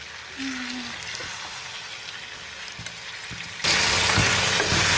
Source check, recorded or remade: recorded